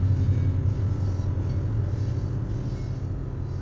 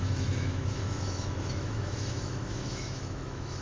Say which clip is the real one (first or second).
first